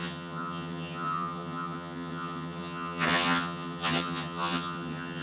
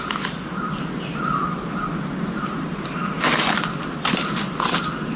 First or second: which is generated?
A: first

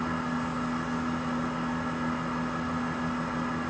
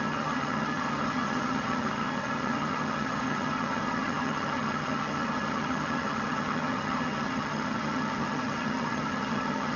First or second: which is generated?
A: second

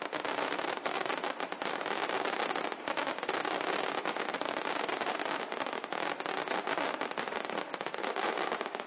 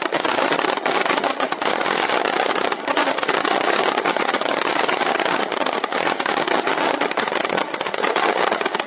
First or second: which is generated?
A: second